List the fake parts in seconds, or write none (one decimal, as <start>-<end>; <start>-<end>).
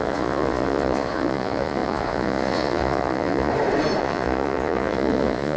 0.0-3.5; 4.0-5.6